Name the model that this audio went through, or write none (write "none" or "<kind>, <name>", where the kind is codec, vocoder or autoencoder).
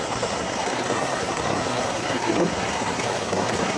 codec, SNAC